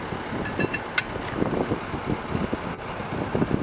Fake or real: real